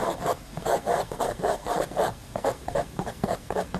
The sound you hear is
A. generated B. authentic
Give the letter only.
A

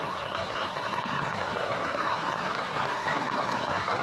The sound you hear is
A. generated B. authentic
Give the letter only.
A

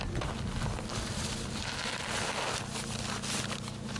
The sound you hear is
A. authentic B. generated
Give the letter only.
A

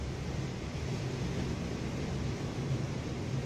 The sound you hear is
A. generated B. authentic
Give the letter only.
B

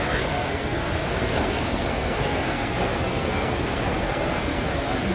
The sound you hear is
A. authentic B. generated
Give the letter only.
B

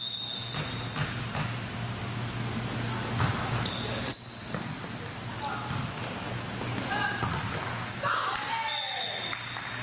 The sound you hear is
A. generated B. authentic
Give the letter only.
B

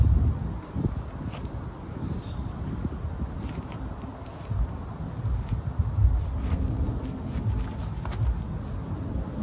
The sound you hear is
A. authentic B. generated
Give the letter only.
A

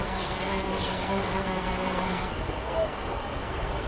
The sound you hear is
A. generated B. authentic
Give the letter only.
A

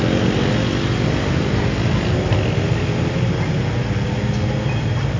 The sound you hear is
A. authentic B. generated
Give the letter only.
A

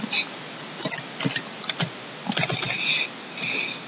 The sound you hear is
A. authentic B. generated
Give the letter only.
A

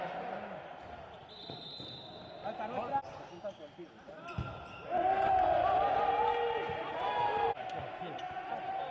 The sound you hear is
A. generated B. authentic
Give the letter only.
B